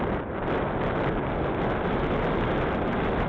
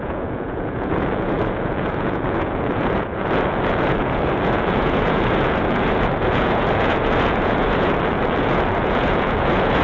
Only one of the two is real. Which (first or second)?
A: first